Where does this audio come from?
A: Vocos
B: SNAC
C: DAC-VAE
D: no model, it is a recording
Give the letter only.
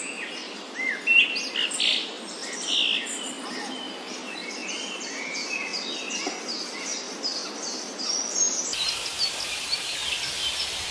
D